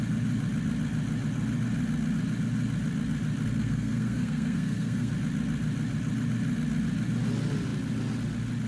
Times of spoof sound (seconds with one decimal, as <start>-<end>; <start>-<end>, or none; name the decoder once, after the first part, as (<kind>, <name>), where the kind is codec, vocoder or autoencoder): 3.6-5.1 (codec, SNAC)